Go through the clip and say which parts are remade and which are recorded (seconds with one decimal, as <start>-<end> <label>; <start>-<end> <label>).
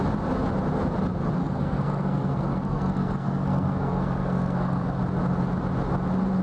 0.0-1.4 recorded; 1.4-5.0 remade; 5.0-6.4 recorded